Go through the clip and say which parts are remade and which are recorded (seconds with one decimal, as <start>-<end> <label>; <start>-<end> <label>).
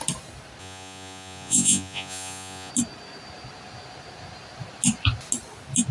0.0-0.6 recorded; 0.6-2.7 remade; 2.7-5.9 recorded